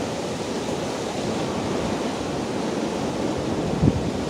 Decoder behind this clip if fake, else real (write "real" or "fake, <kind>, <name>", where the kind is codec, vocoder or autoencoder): real